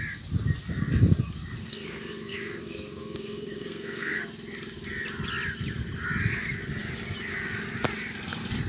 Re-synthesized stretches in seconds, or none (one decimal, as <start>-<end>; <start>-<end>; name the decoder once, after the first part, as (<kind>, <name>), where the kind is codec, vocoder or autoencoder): 1.6-4.2 (codec, SNAC)